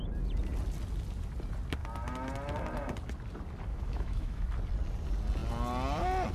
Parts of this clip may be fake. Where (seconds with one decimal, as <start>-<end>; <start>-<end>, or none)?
3.7-4.5